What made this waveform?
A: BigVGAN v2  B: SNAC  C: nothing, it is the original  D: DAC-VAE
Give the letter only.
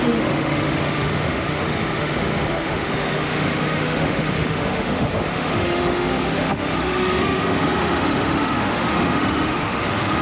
D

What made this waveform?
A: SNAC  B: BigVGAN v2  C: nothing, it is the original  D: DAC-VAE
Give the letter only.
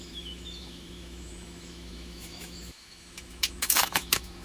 D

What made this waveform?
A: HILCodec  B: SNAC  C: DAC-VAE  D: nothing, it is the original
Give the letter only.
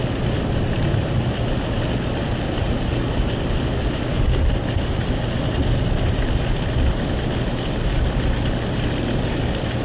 D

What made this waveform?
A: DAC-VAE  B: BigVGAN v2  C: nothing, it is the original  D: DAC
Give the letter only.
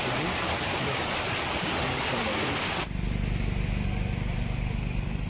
C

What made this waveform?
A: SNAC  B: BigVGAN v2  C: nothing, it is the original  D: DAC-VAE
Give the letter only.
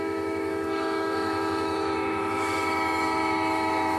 D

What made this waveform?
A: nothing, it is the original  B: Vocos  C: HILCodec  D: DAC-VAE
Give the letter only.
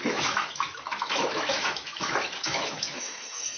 D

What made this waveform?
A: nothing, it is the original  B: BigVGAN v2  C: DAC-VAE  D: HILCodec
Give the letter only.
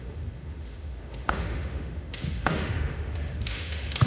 C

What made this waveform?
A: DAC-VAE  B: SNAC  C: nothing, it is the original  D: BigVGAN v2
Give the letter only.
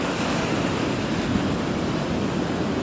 C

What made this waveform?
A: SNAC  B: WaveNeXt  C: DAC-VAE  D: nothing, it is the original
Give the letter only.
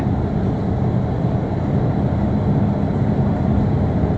D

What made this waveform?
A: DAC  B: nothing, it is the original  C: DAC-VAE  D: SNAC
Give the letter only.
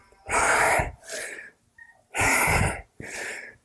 B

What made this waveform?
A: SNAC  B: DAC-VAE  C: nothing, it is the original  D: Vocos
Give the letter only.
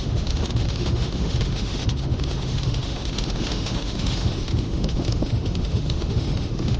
B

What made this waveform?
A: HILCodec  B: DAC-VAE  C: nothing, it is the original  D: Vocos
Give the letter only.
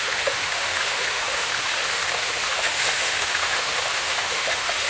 B